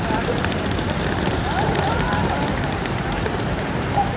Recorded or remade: remade